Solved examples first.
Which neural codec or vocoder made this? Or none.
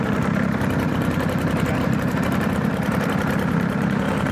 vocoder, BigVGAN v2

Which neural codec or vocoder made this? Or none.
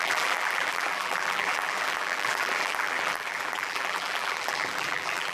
vocoder, BigVGAN v2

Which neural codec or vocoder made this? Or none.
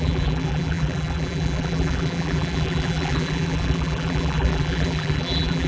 vocoder, BigVGAN v2